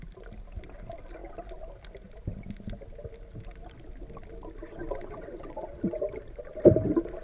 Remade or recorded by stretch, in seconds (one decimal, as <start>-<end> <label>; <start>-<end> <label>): 0.0-4.6 recorded; 4.6-5.7 remade; 5.7-7.2 recorded

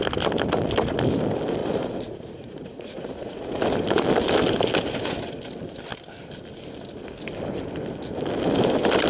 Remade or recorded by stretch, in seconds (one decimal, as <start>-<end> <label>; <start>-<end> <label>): 0.0-1.6 recorded; 1.6-3.6 remade; 3.6-9.1 recorded

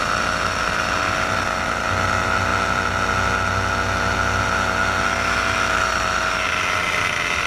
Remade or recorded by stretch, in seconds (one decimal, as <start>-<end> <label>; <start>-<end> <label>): 0.0-7.5 recorded

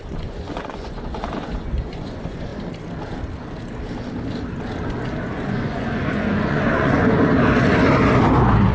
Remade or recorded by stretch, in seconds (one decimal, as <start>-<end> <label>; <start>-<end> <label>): 0.0-2.5 remade; 2.5-5.2 recorded; 5.2-7.3 remade; 7.3-8.7 recorded